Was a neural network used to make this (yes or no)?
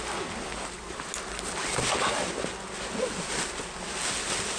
no